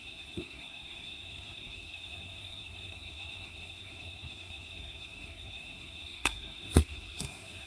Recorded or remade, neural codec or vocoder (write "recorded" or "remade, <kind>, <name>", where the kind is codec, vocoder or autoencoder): remade, codec, SNAC